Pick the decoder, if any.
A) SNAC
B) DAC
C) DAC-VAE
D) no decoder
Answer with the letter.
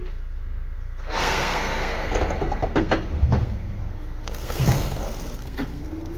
A